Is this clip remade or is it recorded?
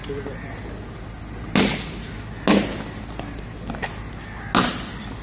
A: recorded